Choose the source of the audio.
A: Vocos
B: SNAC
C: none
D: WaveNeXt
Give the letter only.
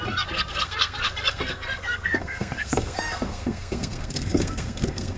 B